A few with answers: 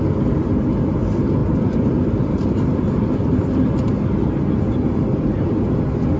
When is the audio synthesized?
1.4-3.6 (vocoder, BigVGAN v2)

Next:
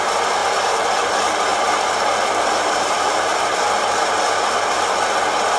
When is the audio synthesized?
0.4-1.1 (vocoder, BigVGAN v2); 1.5-4.1

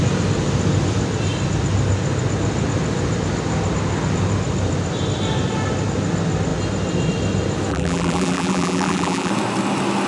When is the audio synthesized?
7.7-9.3 (vocoder, BigVGAN v2)